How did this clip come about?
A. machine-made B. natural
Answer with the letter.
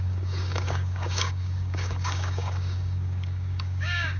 A